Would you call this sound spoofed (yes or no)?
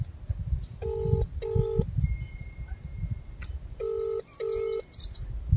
no